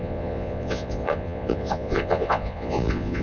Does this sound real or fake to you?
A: fake